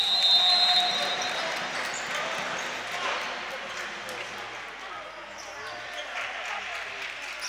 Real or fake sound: real